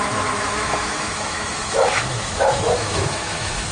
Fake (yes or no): yes